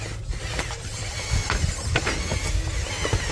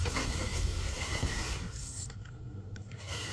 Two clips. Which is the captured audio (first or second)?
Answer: first